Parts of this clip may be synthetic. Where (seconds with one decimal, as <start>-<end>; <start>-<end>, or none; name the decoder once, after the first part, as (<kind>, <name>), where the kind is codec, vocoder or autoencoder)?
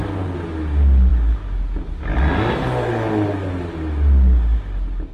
none